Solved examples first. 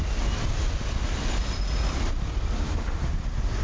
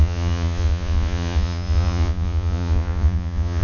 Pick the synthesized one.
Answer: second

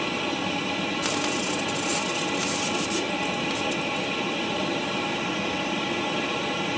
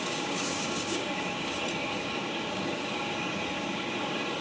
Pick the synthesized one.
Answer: second